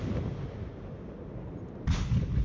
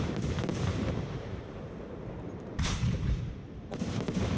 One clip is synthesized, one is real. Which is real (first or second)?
first